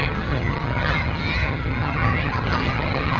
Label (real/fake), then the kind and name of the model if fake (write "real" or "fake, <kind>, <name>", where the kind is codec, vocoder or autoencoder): fake, vocoder, HiFi-GAN